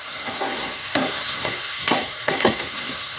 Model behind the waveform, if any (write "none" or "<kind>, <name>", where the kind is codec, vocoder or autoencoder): codec, SNAC